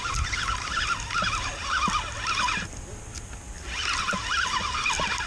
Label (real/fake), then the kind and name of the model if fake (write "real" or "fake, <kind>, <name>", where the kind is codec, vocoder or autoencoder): real